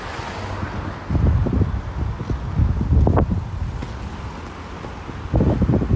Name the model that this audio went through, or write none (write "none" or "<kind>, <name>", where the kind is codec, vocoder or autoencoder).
none